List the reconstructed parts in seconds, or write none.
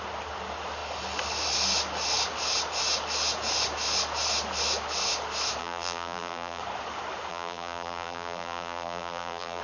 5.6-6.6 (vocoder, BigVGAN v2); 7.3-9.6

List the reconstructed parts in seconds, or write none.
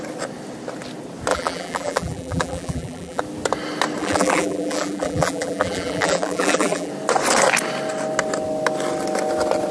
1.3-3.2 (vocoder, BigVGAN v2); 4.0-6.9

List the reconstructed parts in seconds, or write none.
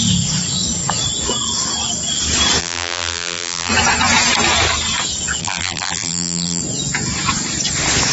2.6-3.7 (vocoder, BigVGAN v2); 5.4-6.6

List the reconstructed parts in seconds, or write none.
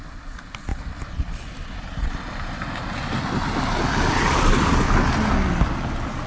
none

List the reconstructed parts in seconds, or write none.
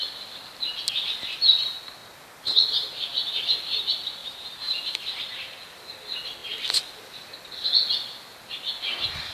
4.2-5.2 (vocoder, BigVGAN v2)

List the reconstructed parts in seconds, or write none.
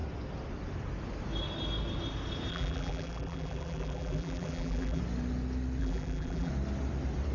2.5-5.0 (vocoder, BigVGAN v2); 5.8-6.5